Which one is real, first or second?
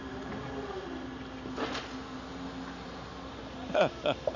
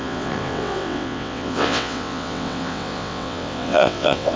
first